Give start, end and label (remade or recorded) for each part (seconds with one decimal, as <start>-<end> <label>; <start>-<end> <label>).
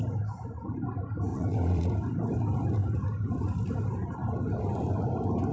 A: 0.0-1.3 recorded; 1.3-1.9 remade; 1.9-5.5 recorded